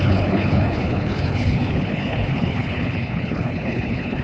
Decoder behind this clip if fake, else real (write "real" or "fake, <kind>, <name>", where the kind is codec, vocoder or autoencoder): fake, codec, HILCodec